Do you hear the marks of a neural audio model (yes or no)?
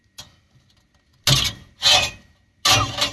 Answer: no